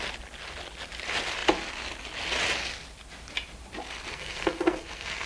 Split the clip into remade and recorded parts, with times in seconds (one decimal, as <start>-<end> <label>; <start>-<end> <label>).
0.0-4.1 recorded; 4.1-5.3 remade